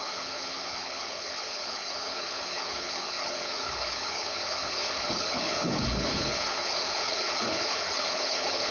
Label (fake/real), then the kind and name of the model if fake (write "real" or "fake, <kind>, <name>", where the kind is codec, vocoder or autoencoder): fake, codec, HILCodec